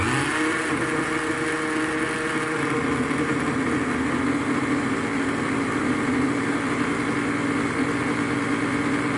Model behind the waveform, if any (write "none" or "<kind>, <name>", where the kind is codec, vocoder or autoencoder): none